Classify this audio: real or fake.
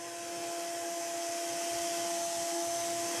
real